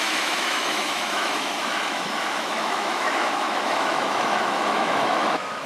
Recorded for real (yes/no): no